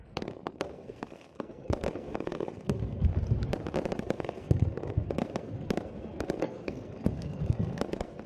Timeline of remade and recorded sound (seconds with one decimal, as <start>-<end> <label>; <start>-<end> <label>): 0.0-3.1 remade; 3.1-4.0 recorded; 4.0-8.3 remade